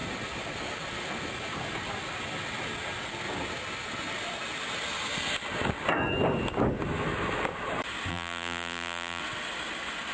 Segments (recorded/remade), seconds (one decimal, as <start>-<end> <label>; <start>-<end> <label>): 0.0-8.1 recorded; 8.1-9.2 remade; 9.2-10.1 recorded

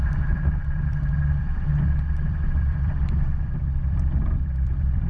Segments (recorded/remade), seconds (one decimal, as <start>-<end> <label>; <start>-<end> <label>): 0.0-1.7 remade; 1.7-2.2 recorded; 2.2-5.1 remade

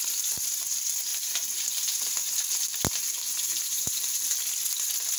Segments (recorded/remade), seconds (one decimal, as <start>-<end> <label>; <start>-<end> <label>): 0.0-1.1 recorded; 1.1-2.3 remade; 2.3-3.3 recorded; 3.3-4.2 remade; 4.2-5.2 recorded

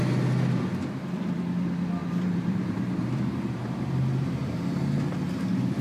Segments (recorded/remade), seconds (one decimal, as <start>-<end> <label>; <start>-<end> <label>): 0.0-2.0 recorded; 2.0-4.6 remade; 4.6-5.8 recorded

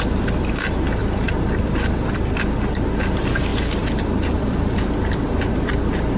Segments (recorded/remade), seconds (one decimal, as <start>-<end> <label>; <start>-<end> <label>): 0.0-1.0 recorded; 1.0-2.4 remade; 2.4-3.5 recorded; 3.5-5.7 remade; 5.7-6.2 recorded

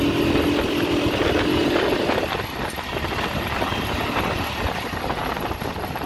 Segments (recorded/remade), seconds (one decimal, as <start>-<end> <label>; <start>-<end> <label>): 0.0-6.1 recorded

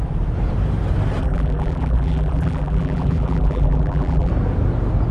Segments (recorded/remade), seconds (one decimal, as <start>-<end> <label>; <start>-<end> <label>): 0.0-1.2 recorded; 1.2-4.3 remade; 4.3-5.1 recorded

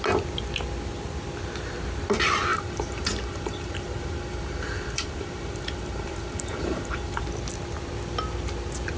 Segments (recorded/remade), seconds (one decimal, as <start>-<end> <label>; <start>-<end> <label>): 0.0-2.5 recorded; 2.5-7.2 remade; 7.2-9.0 recorded